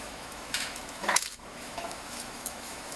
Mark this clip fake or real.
fake